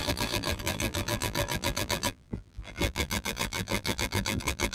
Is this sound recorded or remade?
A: remade